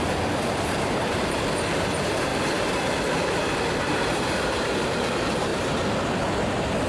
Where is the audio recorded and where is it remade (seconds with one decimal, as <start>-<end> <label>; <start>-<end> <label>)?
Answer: 0.0-5.5 remade; 5.5-6.9 recorded

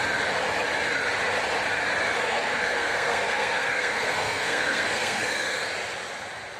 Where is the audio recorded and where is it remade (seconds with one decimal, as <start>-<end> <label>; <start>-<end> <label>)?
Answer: 0.0-2.2 recorded; 2.2-5.7 remade; 5.7-6.6 recorded

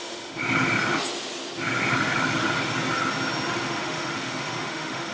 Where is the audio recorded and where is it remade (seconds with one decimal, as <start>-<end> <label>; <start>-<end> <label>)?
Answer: 0.0-0.4 remade; 0.4-3.5 recorded; 3.5-5.1 remade

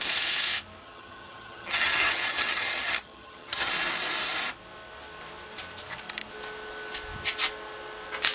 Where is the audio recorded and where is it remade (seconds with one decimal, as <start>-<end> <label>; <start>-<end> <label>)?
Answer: 0.0-0.8 recorded; 0.8-3.7 remade; 3.7-8.3 recorded

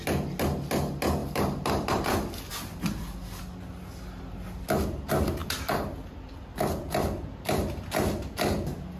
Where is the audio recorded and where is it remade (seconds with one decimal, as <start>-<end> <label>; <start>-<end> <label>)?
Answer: 0.0-1.2 recorded; 1.2-2.5 remade; 2.5-5.4 recorded; 5.4-7.3 remade; 7.3-9.0 recorded

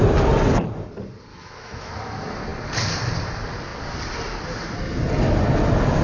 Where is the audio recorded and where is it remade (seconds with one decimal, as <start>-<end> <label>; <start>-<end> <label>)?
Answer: 0.0-1.3 recorded; 1.3-1.9 remade; 1.9-6.0 recorded